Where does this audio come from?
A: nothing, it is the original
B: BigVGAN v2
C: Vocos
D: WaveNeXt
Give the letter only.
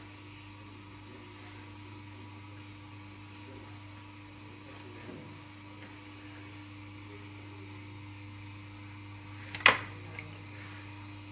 A